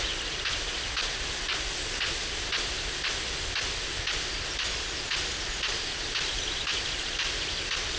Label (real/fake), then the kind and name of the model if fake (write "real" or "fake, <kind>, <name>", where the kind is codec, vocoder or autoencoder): real